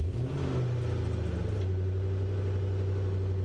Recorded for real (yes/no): yes